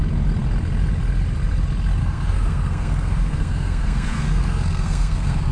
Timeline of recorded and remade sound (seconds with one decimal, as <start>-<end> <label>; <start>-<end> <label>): 0.0-2.0 recorded; 2.0-5.5 remade